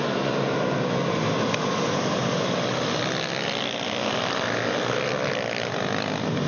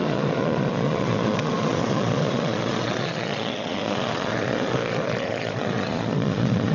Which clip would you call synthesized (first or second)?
second